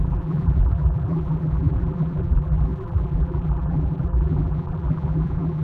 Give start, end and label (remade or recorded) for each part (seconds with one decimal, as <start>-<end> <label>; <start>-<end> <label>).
0.0-5.6 remade